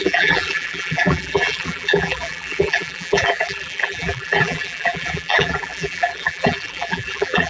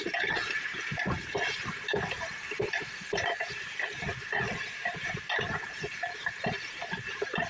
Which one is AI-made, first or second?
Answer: first